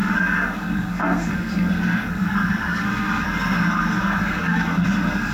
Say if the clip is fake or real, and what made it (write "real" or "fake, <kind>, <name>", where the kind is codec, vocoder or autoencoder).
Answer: fake, codec, SNAC